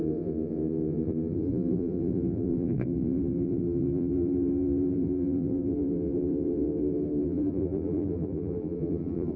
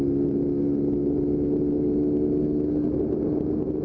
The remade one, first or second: first